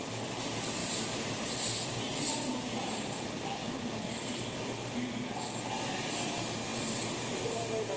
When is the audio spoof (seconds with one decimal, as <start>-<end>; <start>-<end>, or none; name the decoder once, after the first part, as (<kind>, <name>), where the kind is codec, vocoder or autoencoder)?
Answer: 0.8-4.6 (vocoder, BigVGAN v2); 6.7-7.4